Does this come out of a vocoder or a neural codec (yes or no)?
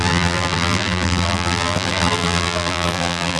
yes